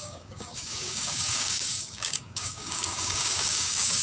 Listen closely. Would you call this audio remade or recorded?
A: remade